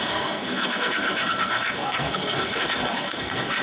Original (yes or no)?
no